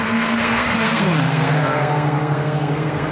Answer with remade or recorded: remade